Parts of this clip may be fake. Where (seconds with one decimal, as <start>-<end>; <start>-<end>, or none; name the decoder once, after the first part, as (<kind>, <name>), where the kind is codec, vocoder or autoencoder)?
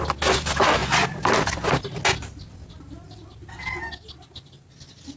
none